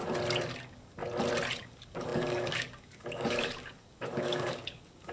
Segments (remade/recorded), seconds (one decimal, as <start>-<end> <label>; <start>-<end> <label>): 0.0-0.6 recorded; 0.6-1.0 remade; 1.0-1.6 recorded; 1.6-5.1 remade